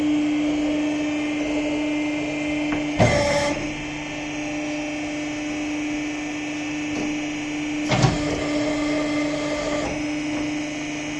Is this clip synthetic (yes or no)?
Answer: no